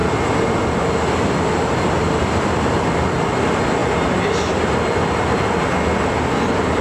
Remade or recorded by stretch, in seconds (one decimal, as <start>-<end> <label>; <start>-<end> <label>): 0.0-0.8 remade; 0.8-6.8 recorded